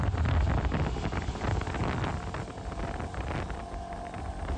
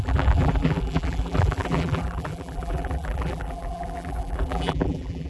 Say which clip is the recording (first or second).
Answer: first